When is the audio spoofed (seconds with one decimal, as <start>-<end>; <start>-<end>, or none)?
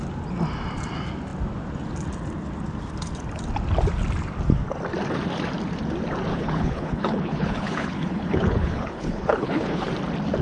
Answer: 6.3-9.9